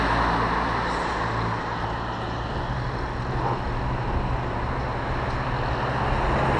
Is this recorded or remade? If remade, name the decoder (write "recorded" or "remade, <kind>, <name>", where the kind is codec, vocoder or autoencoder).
recorded